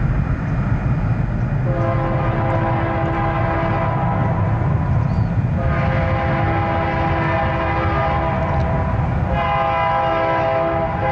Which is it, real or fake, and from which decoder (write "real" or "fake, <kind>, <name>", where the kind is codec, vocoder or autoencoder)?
real